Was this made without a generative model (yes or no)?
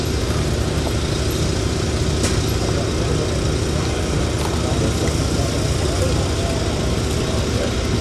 yes